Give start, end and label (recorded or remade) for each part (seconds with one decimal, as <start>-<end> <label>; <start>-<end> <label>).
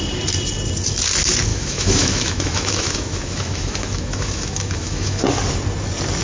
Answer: 0.0-1.5 recorded; 1.5-5.2 remade; 5.2-6.2 recorded